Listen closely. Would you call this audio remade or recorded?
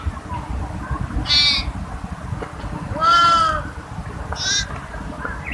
recorded